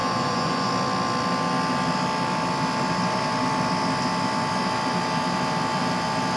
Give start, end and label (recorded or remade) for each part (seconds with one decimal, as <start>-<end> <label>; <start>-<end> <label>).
0.0-0.7 remade; 0.7-6.4 recorded